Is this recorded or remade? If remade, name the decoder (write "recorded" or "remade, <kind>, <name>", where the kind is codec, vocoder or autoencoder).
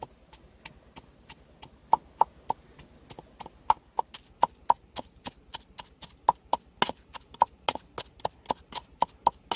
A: recorded